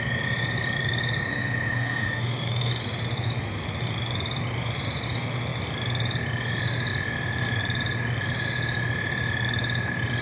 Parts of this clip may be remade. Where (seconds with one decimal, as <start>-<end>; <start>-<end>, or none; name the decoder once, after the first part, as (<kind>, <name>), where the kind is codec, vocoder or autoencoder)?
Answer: 1.3-2.7 (autoencoder, DAC-VAE)